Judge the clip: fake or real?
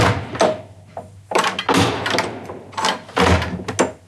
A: real